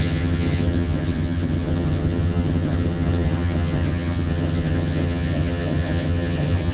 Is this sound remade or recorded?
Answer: remade